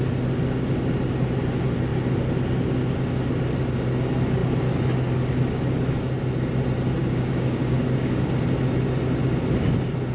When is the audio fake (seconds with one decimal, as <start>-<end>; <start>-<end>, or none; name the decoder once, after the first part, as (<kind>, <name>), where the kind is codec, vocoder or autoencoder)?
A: 7.0-8.3 (codec, DAC)